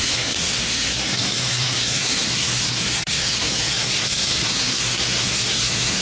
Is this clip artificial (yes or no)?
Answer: yes